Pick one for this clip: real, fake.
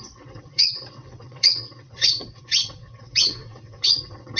fake